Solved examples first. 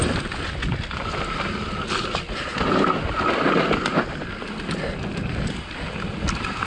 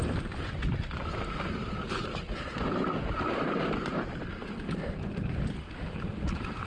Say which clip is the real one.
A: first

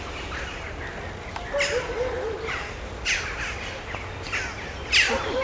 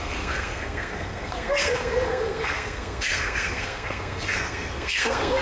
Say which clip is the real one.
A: first